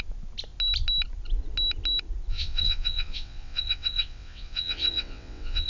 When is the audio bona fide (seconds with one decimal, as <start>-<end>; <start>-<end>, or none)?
0.0-2.3